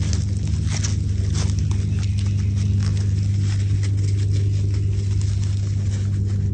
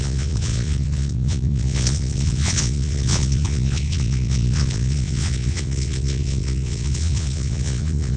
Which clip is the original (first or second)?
first